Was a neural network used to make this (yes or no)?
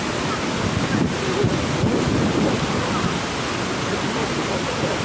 no